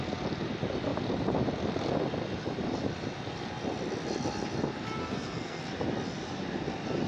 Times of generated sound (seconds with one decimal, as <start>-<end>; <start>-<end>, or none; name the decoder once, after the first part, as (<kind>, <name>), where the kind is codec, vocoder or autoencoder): 5.0-5.6 (codec, SNAC)